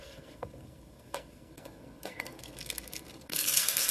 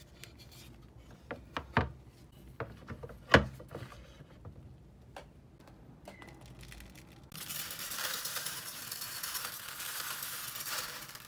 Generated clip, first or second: first